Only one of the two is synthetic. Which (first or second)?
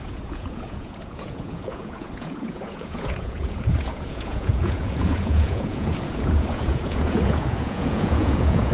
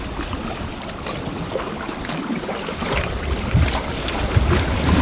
first